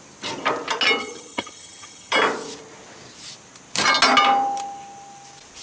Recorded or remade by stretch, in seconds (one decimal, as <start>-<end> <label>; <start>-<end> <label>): 0.0-1.0 recorded; 1.0-2.1 remade; 2.1-5.6 recorded